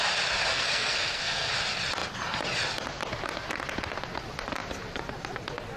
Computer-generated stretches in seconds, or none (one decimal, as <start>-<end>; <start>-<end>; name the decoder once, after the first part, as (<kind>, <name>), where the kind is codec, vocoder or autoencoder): 0.5-1.5 (codec, SNAC)